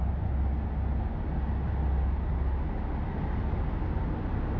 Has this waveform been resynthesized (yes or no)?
no